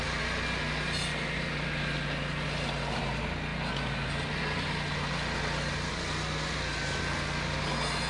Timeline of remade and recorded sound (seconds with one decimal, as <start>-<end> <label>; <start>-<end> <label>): 0.0-8.1 recorded